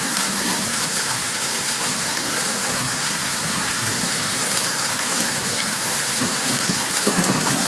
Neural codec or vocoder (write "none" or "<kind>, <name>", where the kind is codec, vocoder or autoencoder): codec, SNAC